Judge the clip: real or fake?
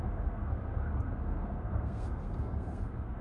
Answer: fake